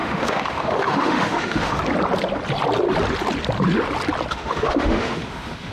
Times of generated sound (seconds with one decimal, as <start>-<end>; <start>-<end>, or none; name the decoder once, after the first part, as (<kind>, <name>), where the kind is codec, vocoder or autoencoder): 0.0-1.8 (autoencoder, DAC-VAE); 4.3-5.7